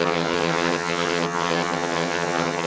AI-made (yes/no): yes